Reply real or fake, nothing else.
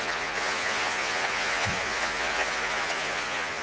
fake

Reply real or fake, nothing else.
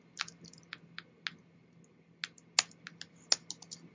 real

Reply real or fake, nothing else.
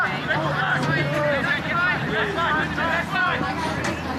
real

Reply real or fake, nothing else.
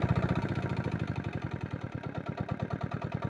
real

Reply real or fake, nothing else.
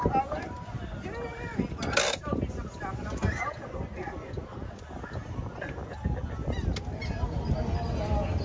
real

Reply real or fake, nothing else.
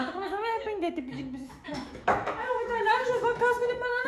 fake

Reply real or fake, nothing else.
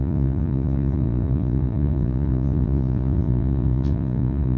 fake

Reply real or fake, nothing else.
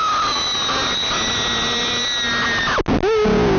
real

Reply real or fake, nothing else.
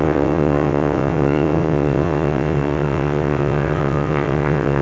fake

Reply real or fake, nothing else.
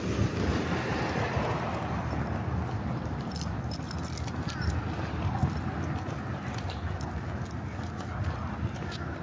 real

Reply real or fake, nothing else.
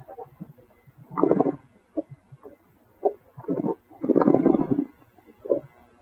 real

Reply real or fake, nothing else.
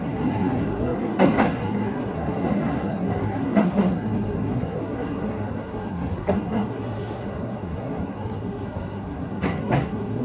fake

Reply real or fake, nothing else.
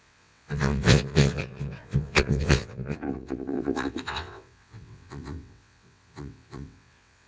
fake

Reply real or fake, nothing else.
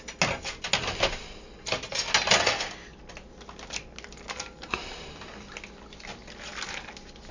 real